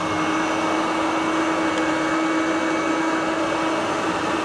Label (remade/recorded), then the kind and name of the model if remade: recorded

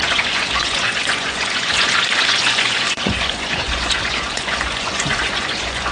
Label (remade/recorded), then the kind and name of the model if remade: remade, vocoder, Vocos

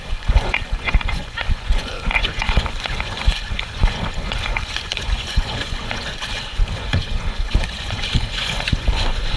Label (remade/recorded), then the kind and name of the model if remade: remade, vocoder, Vocos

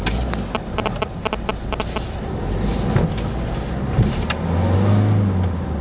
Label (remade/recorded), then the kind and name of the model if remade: recorded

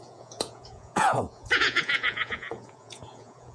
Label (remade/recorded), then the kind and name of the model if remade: remade, vocoder, Vocos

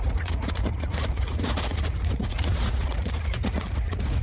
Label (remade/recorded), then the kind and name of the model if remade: remade, vocoder, Vocos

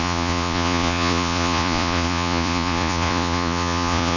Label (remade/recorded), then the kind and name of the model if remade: remade, vocoder, Vocos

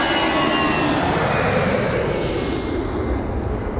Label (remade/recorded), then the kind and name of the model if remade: recorded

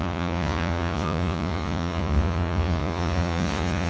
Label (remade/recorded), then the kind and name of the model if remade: remade, vocoder, Vocos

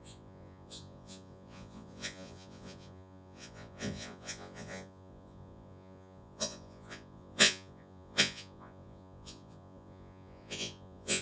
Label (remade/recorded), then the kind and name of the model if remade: remade, vocoder, Vocos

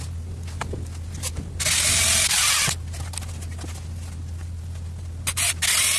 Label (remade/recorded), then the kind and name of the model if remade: recorded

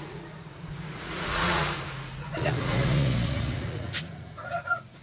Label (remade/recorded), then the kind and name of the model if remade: remade, vocoder, Vocos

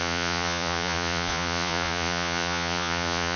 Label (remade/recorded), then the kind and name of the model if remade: remade, vocoder, Vocos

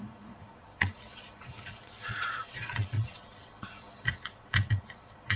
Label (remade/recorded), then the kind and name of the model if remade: remade, vocoder, Vocos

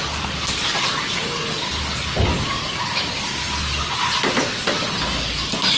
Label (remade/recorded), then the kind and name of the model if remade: recorded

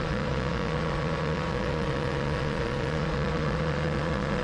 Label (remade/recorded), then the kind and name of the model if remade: remade, vocoder, Vocos